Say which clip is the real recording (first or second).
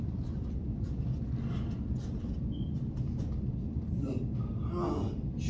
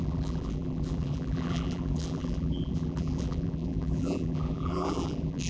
first